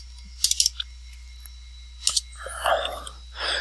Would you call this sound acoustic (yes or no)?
yes